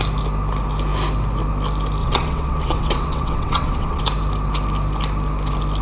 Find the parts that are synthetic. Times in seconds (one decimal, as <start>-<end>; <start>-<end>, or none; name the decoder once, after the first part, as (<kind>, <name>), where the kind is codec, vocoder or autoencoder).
2.0-4.0 (vocoder, WaveNeXt)